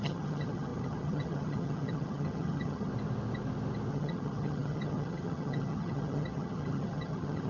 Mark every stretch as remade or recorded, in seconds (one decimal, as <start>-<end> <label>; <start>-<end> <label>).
0.0-2.9 remade; 2.9-3.9 recorded; 3.9-7.5 remade